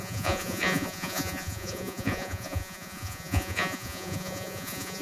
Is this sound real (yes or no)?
no